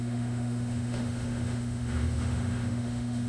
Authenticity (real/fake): fake